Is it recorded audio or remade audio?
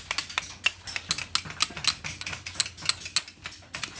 recorded